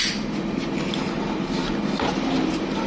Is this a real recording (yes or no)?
yes